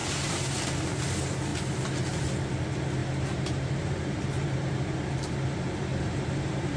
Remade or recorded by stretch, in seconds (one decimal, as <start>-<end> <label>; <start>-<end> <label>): 0.0-0.6 remade; 0.6-3.0 recorded; 3.0-4.5 remade; 4.5-5.9 recorded; 5.9-6.8 remade